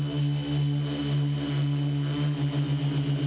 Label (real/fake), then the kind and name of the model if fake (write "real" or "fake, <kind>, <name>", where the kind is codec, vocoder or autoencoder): real